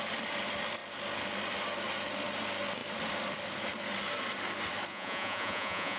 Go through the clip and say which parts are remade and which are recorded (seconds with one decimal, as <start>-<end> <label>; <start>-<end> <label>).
0.0-4.9 recorded; 4.9-6.0 remade